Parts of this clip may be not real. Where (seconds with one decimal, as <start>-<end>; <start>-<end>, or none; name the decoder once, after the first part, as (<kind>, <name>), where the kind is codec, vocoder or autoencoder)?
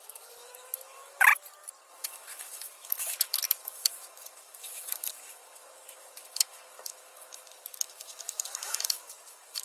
0.0-1.3 (autoencoder, DAC-VAE); 1.9-9.6